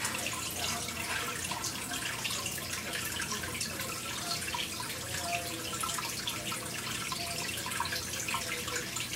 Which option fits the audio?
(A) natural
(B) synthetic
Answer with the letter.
A